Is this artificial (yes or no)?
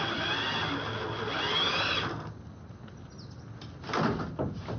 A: no